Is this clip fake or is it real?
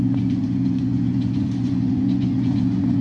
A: fake